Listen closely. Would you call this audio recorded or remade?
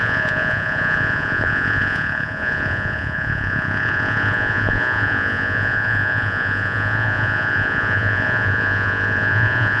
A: remade